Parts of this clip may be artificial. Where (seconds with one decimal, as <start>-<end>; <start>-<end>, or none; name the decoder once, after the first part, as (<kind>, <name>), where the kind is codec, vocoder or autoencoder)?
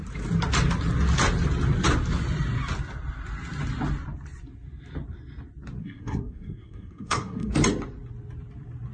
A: 5.8-7.5 (codec, SNAC)